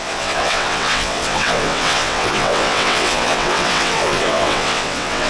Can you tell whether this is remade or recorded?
remade